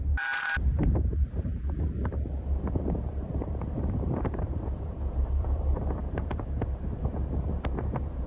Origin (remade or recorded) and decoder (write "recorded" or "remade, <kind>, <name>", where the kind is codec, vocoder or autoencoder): remade, vocoder, BigVGAN v2